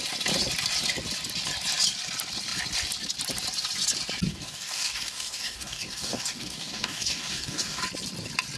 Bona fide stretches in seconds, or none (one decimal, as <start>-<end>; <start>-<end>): 0.0-4.3; 7.8-8.6